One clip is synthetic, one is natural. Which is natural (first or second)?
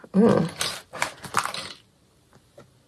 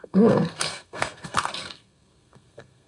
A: first